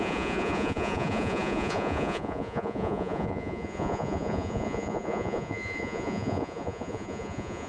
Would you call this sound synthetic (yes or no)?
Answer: yes